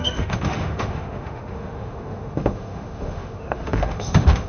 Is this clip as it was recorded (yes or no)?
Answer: no